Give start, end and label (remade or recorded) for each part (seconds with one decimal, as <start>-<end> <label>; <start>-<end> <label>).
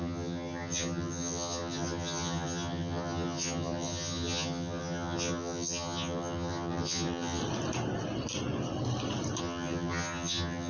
0.0-7.4 remade; 7.4-9.4 recorded; 9.4-10.7 remade